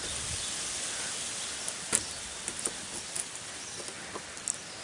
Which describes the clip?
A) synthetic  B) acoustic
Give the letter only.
B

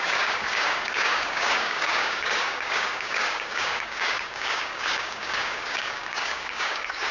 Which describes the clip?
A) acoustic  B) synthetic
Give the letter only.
B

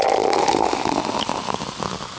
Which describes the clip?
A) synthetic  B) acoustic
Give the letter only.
B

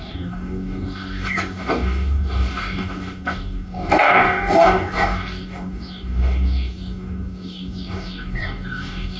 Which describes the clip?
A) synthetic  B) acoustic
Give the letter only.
A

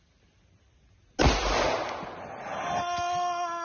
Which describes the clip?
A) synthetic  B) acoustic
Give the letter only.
B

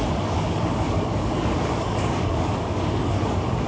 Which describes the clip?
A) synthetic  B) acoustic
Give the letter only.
A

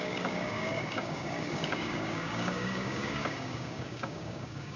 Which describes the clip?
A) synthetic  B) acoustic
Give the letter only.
A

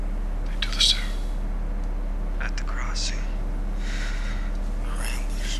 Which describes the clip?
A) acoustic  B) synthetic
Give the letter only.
A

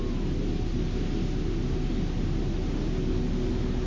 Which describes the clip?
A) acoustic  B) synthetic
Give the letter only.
A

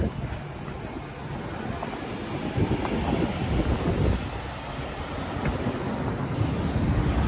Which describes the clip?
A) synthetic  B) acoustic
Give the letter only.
B